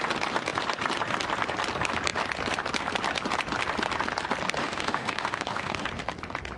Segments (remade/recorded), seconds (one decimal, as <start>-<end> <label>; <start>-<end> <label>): 0.0-4.6 recorded; 4.6-5.9 remade; 5.9-6.6 recorded

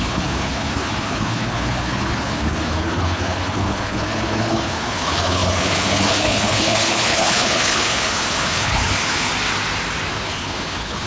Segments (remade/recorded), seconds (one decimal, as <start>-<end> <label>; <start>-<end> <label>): 0.0-9.3 remade; 9.3-10.1 recorded; 10.1-11.1 remade

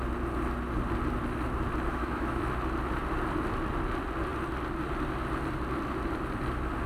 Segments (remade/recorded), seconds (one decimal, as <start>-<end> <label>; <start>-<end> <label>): 0.0-1.9 recorded; 1.9-2.4 remade; 2.4-6.9 recorded

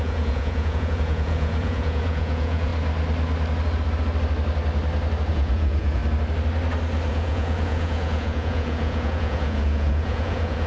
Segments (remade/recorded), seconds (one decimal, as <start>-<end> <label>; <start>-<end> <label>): 0.0-2.7 remade; 2.7-5.3 recorded; 5.3-6.0 remade; 6.0-7.1 recorded; 7.1-10.7 remade

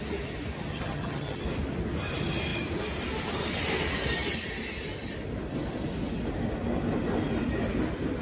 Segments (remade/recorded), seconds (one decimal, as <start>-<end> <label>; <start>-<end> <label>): 0.0-0.7 recorded; 0.7-1.4 remade; 1.4-8.2 recorded

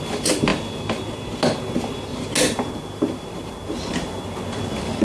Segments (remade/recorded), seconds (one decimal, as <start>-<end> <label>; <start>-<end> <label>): 0.0-5.0 recorded